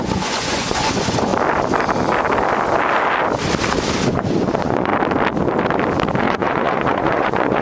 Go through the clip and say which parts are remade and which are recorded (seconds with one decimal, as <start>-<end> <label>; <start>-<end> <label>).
0.0-1.3 remade; 1.3-4.1 recorded; 4.1-4.9 remade; 4.9-6.2 recorded; 6.2-7.6 remade